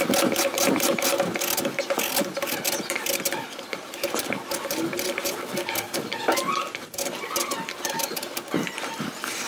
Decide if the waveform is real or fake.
real